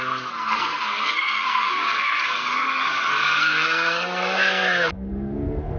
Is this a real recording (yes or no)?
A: no